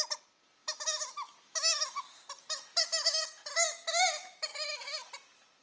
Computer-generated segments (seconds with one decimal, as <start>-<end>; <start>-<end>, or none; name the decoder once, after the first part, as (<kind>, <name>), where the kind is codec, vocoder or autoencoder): 0.6-2.0 (autoencoder, DAC-VAE); 4.5-5.1